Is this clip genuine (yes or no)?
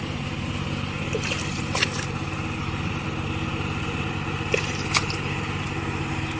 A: yes